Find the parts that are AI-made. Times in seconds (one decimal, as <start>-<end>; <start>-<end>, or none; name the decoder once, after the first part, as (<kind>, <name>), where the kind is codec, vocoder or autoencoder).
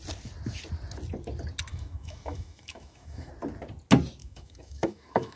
1.7-3.3 (autoencoder, DAC-VAE); 4.2-5.4